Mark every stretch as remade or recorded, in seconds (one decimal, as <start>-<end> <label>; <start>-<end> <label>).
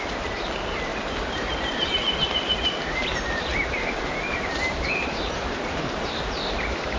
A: 0.0-0.9 recorded; 0.9-1.9 remade; 1.9-3.5 recorded; 3.5-6.2 remade; 6.2-7.0 recorded